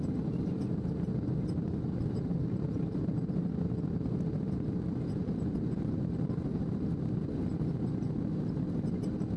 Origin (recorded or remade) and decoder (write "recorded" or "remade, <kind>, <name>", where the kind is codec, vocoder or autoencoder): recorded